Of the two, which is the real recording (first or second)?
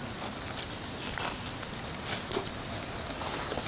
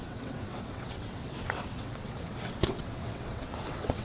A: first